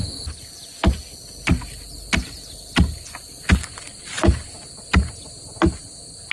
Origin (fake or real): real